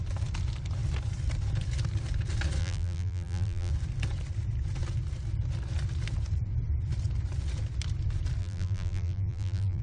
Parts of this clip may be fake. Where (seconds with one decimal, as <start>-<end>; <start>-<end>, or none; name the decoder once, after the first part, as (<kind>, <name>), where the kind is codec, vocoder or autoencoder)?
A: 2.6-3.7 (vocoder, BigVGAN v2); 8.4-9.8